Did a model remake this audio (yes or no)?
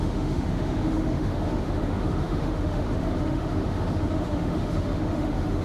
yes